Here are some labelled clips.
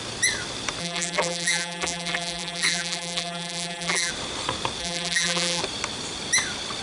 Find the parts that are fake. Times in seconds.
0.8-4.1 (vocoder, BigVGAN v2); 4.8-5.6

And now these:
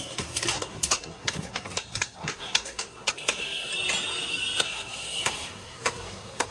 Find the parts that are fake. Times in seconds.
0.0-3.7 (codec, SNAC); 4.6-6.5

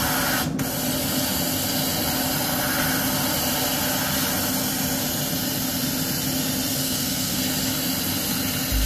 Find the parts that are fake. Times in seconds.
6.8-7.4 (codec, SNAC)

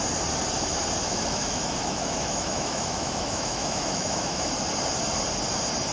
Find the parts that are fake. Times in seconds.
1.0-4.5 (autoencoder, DAC-VAE)

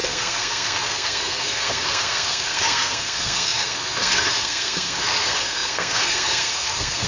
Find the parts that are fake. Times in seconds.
0.0-7.1 (codec, SNAC)